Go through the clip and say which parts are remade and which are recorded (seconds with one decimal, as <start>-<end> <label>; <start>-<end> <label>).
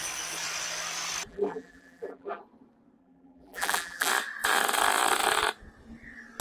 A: 0.0-1.3 recorded; 1.3-2.4 remade; 2.4-3.0 recorded; 3.0-4.1 remade; 4.1-6.4 recorded